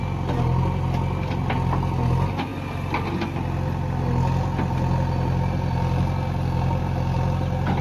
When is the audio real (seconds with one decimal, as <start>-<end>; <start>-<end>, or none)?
0.0-7.8